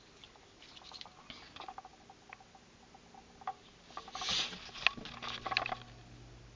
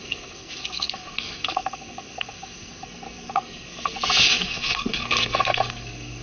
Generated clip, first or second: second